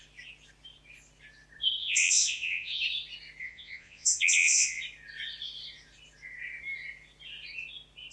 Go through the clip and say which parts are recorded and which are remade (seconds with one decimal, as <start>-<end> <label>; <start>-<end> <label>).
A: 0.0-1.8 recorded; 1.8-2.8 remade; 2.8-3.4 recorded; 3.4-4.8 remade; 4.8-8.1 recorded